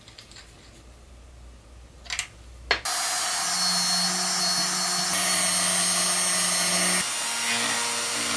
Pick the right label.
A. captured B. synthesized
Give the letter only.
A